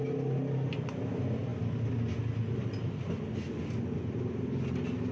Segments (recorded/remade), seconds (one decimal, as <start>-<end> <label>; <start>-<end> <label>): 0.0-5.1 recorded